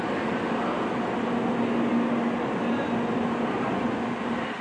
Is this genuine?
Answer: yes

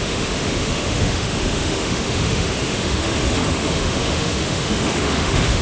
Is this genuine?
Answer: no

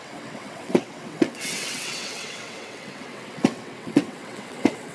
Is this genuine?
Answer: no